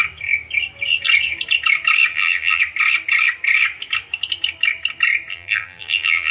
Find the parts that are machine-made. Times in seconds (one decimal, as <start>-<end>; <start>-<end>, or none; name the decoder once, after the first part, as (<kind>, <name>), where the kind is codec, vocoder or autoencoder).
2.1-2.6 (vocoder, BigVGAN v2); 5.3-6.3